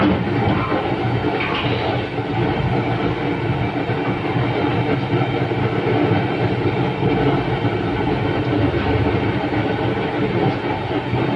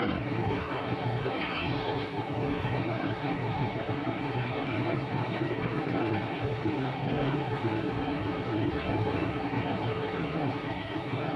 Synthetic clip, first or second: second